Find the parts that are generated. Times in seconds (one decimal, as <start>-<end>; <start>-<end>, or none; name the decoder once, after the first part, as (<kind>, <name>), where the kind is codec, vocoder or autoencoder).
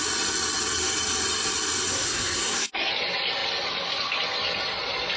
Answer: 1.9-2.9 (codec, SNAC)